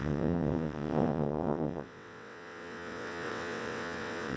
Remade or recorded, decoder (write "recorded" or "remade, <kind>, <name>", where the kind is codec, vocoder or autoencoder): remade, vocoder, WaveNeXt